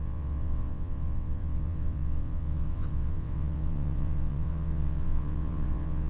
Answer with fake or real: fake